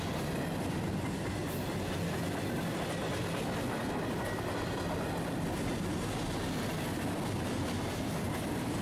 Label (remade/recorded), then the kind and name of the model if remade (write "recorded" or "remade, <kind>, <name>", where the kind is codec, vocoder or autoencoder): recorded